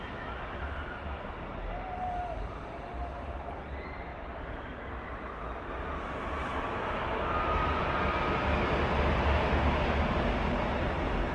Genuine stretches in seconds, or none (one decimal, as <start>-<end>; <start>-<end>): 0.0-11.3